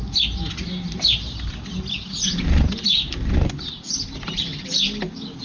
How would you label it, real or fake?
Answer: real